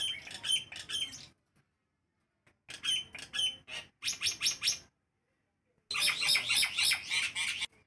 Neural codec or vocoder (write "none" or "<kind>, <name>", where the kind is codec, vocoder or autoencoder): none